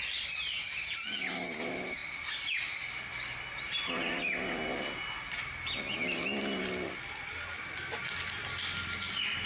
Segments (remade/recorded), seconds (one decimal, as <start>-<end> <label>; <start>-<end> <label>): 0.0-9.5 recorded